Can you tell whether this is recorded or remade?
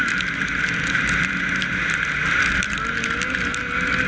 recorded